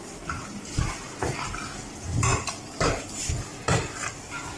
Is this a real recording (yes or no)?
yes